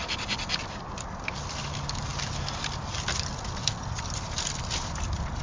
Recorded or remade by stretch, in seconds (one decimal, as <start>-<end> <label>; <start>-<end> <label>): 0.0-5.4 recorded